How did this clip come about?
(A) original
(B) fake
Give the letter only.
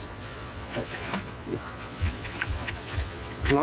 B